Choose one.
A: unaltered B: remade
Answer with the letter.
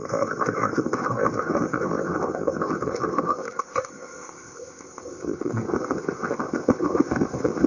B